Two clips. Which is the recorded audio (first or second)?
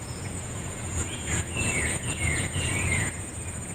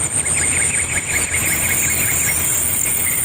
second